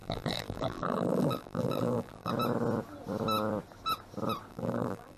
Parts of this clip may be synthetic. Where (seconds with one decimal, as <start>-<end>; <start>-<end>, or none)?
0.0-2.3; 4.5-5.2